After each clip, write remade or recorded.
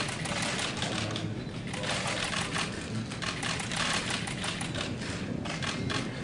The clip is recorded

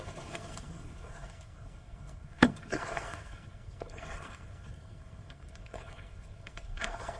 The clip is remade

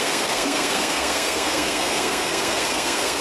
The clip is remade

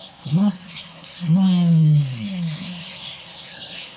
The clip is remade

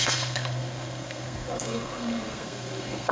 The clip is remade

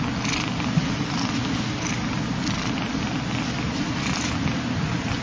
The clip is recorded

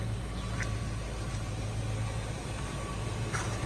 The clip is recorded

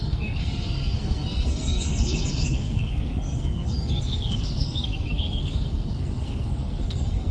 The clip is remade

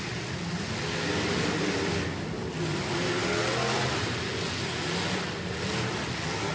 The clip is recorded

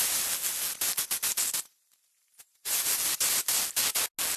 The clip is recorded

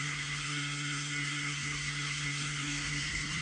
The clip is remade